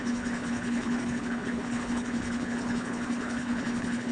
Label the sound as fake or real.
fake